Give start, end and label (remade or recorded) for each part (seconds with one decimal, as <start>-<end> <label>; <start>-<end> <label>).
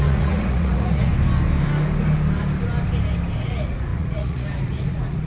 0.0-1.1 remade; 1.1-3.4 recorded; 3.4-5.3 remade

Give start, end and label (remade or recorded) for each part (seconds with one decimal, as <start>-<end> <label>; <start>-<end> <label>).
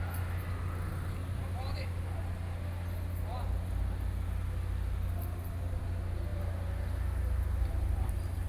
0.0-8.5 recorded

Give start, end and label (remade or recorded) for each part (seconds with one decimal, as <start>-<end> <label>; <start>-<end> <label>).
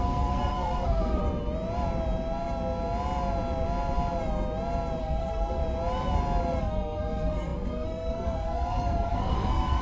0.0-1.2 remade; 1.2-5.0 recorded; 5.0-5.6 remade; 5.6-6.6 recorded; 6.6-9.8 remade